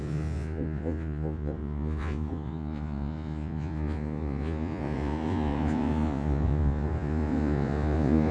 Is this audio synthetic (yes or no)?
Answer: yes